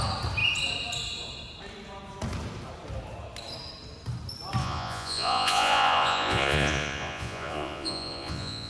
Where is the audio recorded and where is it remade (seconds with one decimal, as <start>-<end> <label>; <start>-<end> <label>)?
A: 0.0-4.6 recorded; 4.6-8.7 remade